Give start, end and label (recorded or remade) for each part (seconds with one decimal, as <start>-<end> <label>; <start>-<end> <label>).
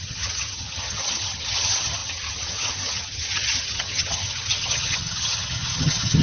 0.0-6.2 remade